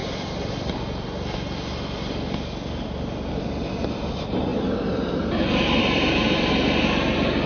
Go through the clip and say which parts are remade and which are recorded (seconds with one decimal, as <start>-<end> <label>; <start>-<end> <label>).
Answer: 0.0-4.5 recorded; 4.5-6.5 remade; 6.5-7.5 recorded